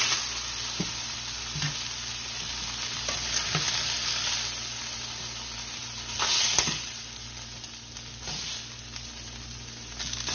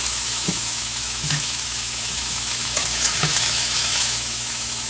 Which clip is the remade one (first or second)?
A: second